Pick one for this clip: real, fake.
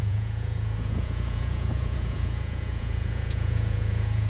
fake